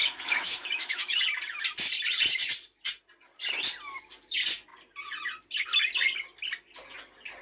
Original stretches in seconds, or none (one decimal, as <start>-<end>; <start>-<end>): 1.2-7.4